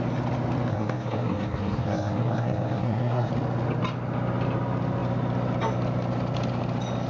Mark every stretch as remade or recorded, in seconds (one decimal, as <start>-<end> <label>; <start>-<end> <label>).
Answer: 0.0-0.7 recorded; 0.7-3.3 remade; 3.3-7.1 recorded